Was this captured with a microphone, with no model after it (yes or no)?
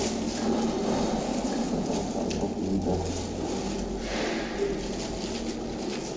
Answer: yes